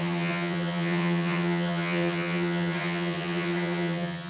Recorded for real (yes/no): no